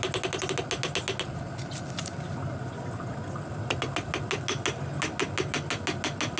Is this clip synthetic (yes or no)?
no